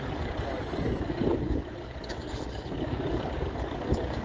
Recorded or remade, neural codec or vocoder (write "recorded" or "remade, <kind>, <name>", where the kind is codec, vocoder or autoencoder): remade, codec, DAC